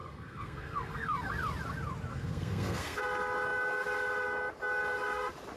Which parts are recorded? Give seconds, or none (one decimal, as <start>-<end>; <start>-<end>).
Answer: 1.3-2.1; 3.0-5.6